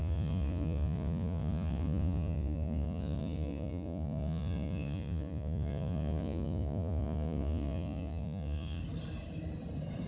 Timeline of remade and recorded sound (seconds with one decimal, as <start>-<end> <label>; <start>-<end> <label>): 0.0-8.8 remade; 8.8-10.1 recorded